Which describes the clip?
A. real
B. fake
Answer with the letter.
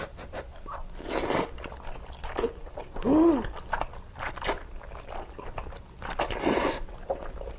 A